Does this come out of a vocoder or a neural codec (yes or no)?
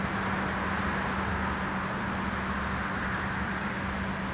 no